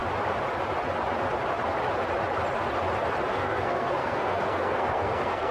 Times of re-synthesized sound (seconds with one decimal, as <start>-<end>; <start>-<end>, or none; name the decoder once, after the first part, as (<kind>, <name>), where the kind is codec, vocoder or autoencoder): 3.3-5.5 (codec, SNAC)

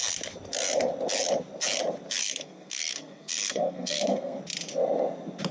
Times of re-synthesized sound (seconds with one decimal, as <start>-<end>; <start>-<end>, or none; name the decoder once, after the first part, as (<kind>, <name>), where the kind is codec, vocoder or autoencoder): 2.2-4.4 (codec, SNAC)